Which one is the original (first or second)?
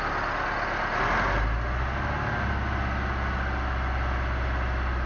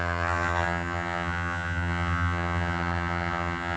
first